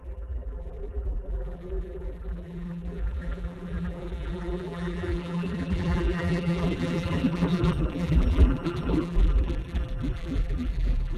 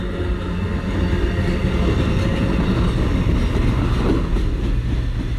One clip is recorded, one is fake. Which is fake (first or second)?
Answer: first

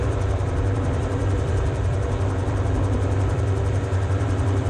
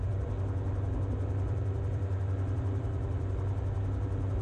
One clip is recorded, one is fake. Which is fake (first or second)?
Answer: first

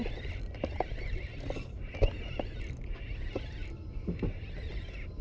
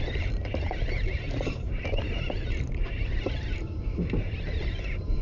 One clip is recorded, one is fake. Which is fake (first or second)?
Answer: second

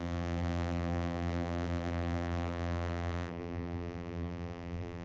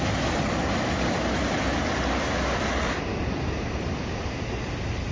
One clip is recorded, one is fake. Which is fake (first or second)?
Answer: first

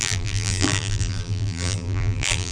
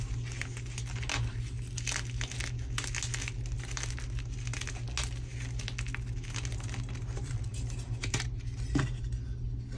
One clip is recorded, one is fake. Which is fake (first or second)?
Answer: first